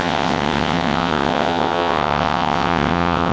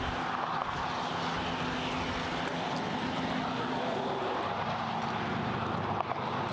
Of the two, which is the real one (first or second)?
second